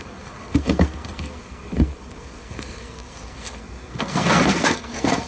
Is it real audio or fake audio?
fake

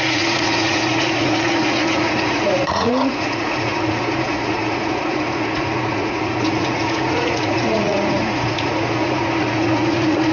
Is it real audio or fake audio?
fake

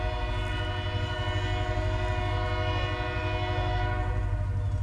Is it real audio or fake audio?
real